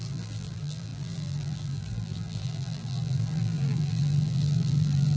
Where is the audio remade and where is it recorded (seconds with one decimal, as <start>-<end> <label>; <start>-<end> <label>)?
0.0-5.2 remade